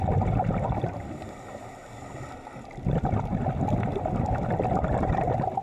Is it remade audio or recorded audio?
recorded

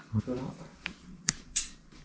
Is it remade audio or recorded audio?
remade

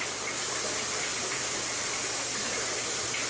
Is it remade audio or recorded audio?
recorded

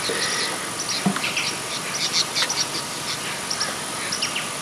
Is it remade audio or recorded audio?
recorded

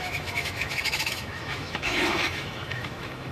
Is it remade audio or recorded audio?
remade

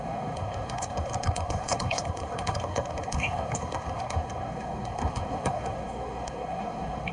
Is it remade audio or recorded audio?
remade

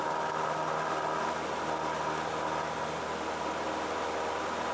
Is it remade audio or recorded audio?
recorded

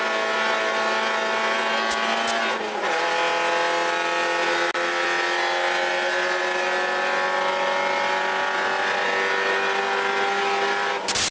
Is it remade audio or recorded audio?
recorded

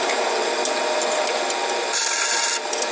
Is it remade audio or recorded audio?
recorded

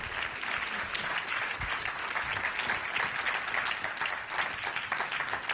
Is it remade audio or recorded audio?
recorded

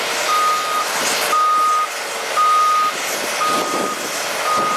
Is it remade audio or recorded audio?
recorded